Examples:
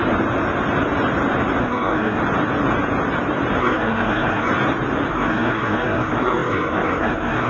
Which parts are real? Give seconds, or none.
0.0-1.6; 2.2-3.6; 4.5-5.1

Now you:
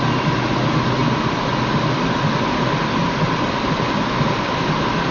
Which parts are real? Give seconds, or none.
0.0-5.1

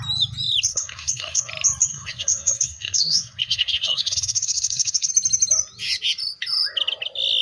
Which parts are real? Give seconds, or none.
0.0-0.7; 1.5-1.9; 5.1-7.4